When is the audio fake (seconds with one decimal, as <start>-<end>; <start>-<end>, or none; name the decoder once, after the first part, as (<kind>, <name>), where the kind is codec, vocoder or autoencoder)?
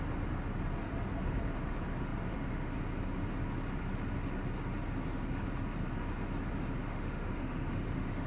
6.9-8.3 (autoencoder, DAC-VAE)